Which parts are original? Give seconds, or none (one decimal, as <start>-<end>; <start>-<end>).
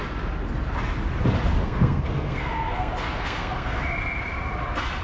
0.0-1.6; 3.8-5.0